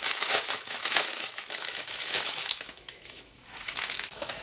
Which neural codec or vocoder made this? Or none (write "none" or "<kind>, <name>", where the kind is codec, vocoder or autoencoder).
autoencoder, DAC-VAE